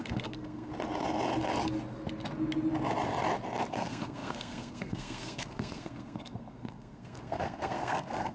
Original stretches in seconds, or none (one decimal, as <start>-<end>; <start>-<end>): 0.7-3.7